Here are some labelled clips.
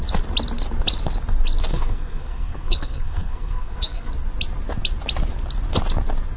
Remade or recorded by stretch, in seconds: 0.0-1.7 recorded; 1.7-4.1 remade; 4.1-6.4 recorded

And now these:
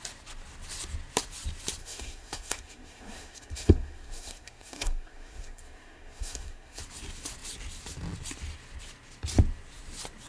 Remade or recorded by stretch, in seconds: 0.0-1.8 recorded; 1.8-6.8 remade; 6.8-10.3 recorded